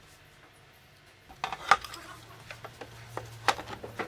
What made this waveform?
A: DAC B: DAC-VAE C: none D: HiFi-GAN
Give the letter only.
C